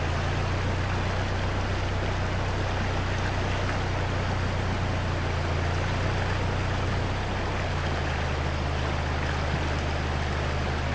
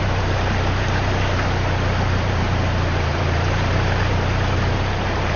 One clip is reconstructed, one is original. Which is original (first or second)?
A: first